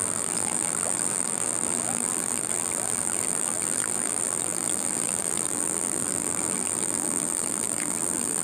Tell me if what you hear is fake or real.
fake